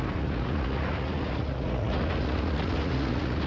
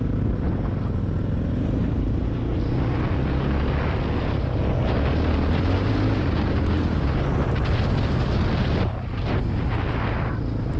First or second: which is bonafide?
second